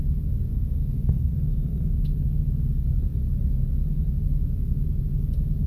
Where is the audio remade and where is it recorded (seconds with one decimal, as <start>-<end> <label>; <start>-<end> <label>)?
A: 0.0-0.5 recorded; 0.5-1.9 remade; 1.9-5.7 recorded